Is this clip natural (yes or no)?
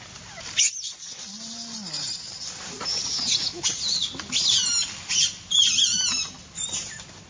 yes